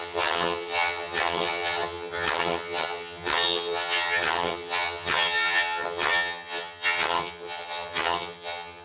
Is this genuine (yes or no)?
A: no